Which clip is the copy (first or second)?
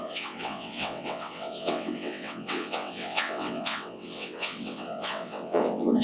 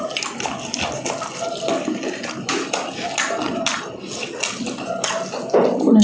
first